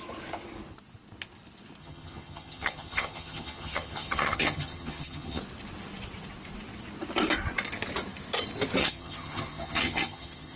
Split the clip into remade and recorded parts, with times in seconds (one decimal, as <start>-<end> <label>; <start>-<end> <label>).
0.0-1.8 recorded; 1.8-5.4 remade; 5.4-8.8 recorded; 8.8-10.6 remade

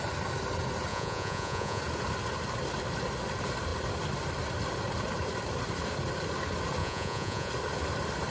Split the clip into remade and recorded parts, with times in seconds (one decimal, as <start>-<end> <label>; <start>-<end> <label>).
0.0-0.9 recorded; 0.9-1.8 remade; 1.8-6.8 recorded; 6.8-7.5 remade; 7.5-8.3 recorded

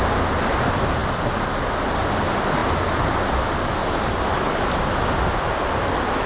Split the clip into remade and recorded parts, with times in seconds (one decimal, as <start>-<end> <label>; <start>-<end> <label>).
0.0-6.3 recorded